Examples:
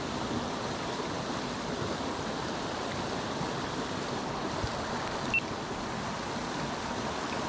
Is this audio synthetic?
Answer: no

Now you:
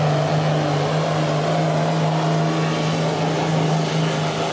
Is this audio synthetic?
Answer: no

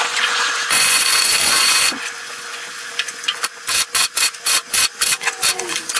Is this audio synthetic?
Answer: yes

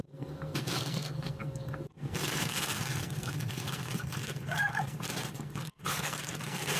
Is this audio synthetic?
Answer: yes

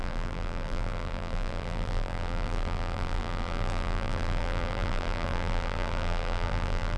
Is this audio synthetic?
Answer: yes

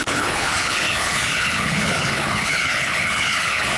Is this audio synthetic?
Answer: yes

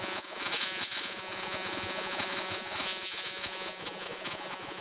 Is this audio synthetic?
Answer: yes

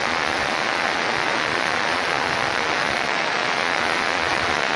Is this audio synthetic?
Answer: yes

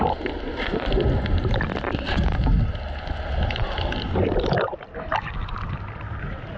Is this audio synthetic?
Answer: no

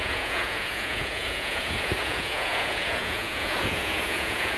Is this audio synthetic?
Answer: yes